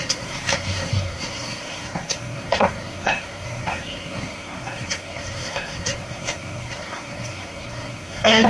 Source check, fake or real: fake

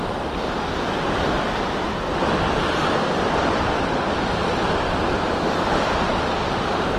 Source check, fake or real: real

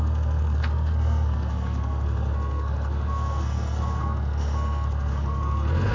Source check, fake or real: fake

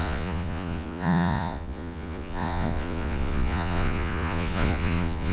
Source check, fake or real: fake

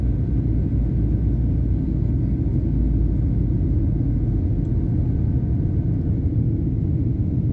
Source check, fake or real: real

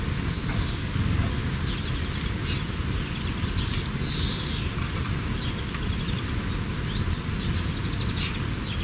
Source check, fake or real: real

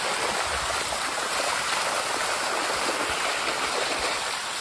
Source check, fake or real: real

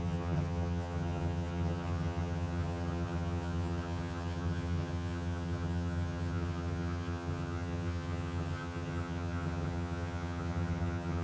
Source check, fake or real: fake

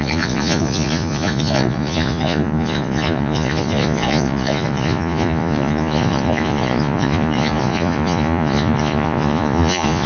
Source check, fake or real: fake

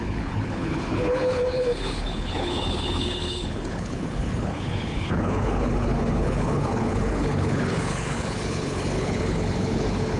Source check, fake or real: fake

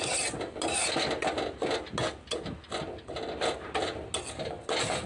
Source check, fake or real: real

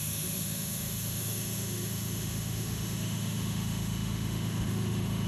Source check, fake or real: fake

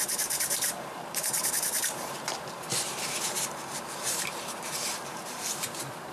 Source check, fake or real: fake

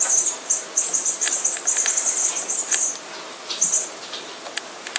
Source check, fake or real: fake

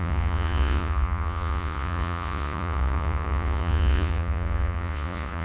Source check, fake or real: fake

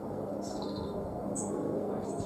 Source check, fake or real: fake